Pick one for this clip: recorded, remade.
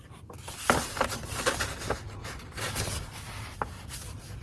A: recorded